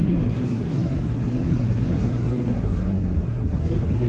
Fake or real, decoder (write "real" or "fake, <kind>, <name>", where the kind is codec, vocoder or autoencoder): fake, codec, SNAC